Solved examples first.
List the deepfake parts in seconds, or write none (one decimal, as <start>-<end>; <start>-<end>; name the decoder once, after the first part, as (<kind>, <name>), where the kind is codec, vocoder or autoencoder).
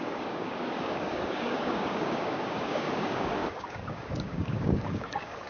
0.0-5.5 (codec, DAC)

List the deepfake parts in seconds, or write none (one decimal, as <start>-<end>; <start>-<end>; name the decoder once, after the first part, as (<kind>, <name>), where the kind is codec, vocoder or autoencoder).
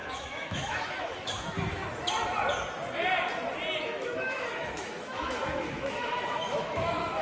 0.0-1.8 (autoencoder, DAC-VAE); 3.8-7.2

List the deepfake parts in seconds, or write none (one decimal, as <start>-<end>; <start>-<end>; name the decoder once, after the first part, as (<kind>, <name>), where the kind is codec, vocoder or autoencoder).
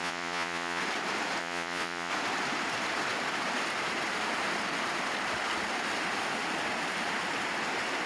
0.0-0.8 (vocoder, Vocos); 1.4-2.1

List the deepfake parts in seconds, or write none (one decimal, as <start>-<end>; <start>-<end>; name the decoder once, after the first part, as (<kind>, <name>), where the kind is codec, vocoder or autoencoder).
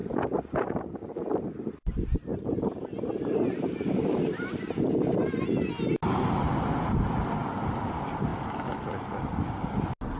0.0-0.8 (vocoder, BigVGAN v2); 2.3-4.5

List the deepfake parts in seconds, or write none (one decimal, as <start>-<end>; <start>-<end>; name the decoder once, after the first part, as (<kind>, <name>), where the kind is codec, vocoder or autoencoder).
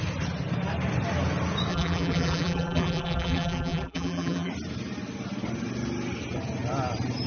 1.7-4.5 (vocoder, BigVGAN v2)